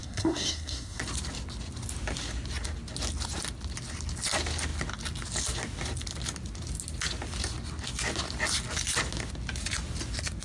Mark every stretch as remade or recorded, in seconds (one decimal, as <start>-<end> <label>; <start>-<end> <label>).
0.0-1.0 remade; 1.0-10.4 recorded